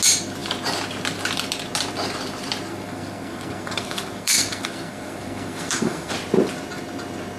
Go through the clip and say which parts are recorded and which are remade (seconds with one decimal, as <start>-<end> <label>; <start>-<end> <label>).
0.0-2.7 recorded; 2.7-6.1 remade; 6.1-7.4 recorded